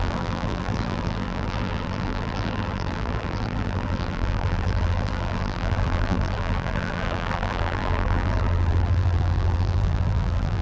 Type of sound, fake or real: fake